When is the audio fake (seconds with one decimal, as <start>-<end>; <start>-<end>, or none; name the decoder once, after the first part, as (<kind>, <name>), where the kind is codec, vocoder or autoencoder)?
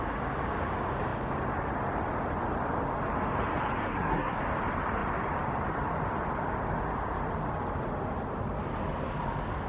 3.8-4.4 (codec, SNAC)